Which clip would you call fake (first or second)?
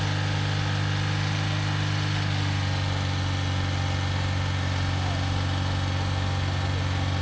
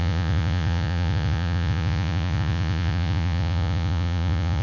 second